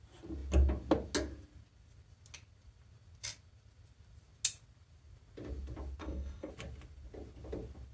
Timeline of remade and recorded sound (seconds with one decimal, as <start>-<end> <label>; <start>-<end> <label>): 0.0-6.0 recorded; 6.0-6.5 remade; 6.5-7.9 recorded